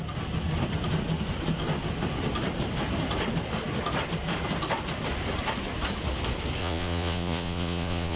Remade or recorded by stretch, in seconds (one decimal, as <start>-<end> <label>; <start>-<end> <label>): 0.0-6.6 recorded; 6.6-8.2 remade